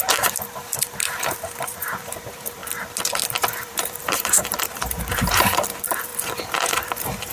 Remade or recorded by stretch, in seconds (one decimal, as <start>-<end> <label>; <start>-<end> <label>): 0.0-2.6 remade; 2.6-3.6 recorded; 3.6-6.1 remade; 6.1-6.7 recorded; 6.7-7.3 remade